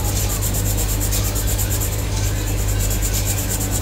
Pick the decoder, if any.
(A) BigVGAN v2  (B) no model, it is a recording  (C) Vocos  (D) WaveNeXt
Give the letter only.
B